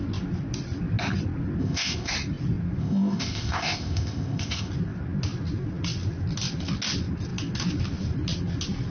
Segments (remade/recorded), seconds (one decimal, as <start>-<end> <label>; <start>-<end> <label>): 0.0-1.6 recorded; 1.6-2.1 remade; 2.1-2.8 recorded; 2.8-4.7 remade; 4.7-8.9 recorded